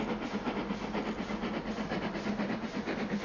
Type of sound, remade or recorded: recorded